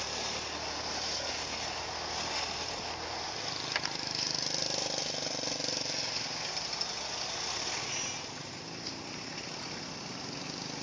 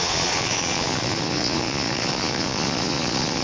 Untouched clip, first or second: first